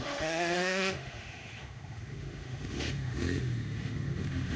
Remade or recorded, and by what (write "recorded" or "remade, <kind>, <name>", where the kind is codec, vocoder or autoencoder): remade, autoencoder, DAC-VAE